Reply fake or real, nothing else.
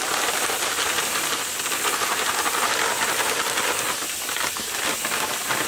real